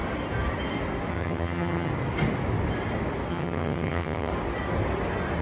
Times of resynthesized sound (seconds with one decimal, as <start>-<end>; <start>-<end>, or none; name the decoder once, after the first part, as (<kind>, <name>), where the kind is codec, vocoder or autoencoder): 1.1-1.9 (vocoder, HiFi-GAN); 3.3-4.3